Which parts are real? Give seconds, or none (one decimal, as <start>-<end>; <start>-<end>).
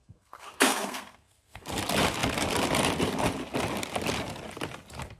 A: 1.7-5.2